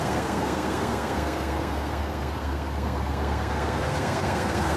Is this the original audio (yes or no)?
no